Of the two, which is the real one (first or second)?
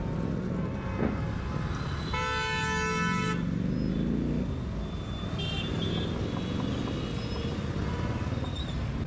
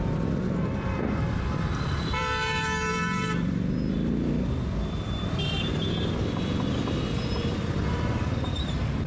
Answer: first